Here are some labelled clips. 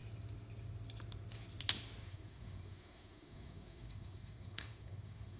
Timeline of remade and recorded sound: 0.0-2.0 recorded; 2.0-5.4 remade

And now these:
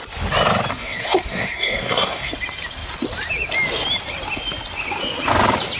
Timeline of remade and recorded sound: 0.0-0.7 recorded; 0.7-2.3 remade; 2.3-5.8 recorded